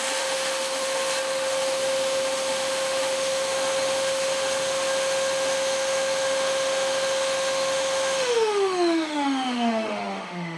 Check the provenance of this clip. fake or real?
fake